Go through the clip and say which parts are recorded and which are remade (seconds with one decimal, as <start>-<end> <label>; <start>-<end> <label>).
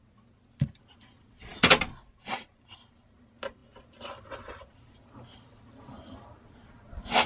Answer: 0.0-7.3 recorded